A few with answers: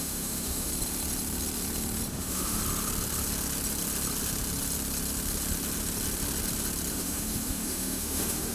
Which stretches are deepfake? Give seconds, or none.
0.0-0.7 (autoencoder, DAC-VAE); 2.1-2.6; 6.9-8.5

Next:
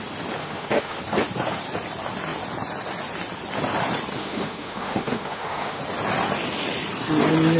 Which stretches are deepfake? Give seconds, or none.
0.4-1.0 (autoencoder, DAC-VAE); 4.2-5.8

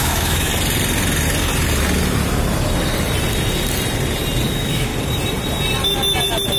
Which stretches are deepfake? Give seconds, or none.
0.0-0.5 (autoencoder, DAC-VAE); 4.5-4.9